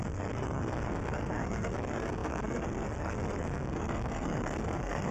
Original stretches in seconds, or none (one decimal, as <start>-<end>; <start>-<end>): none